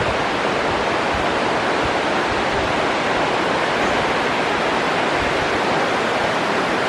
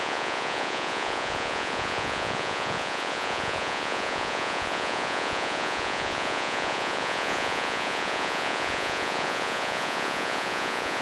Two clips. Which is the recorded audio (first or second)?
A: first